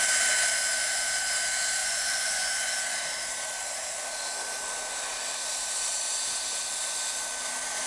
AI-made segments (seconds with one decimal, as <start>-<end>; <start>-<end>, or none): 1.8-2.7